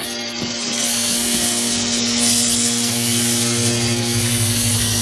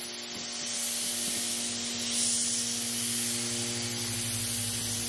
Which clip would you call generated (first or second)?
first